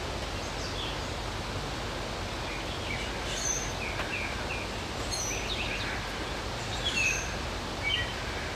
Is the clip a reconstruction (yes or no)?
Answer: no